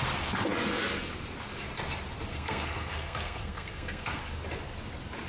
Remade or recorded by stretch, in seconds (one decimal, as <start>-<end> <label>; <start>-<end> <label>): 0.0-2.3 recorded; 2.3-4.2 remade; 4.2-5.3 recorded